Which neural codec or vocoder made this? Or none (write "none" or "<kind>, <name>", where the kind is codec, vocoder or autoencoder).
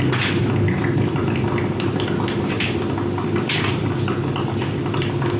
none